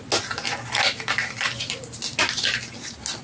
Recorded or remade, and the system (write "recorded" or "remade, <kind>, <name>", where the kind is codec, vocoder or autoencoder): recorded